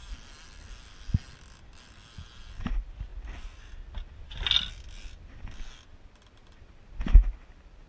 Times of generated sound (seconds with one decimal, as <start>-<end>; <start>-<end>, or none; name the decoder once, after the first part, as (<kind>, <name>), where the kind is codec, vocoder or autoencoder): none